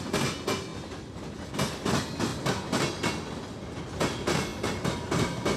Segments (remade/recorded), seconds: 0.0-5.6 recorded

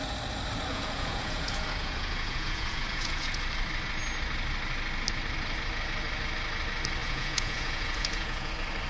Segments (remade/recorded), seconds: 0.0-0.7 recorded; 0.7-3.4 remade; 3.4-7.0 recorded; 7.0-8.5 remade; 8.5-8.9 recorded